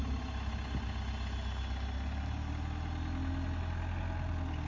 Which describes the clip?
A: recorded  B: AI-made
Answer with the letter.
A